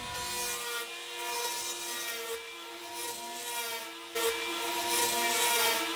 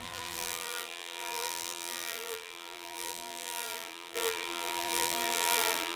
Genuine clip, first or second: first